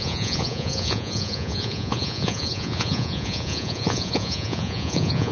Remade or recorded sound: remade